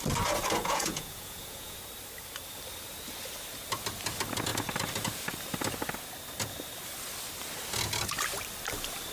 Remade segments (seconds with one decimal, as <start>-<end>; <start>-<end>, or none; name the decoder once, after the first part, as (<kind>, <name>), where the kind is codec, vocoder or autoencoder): 0.6-1.8 (vocoder, Vocos)